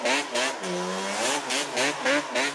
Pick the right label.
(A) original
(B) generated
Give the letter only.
A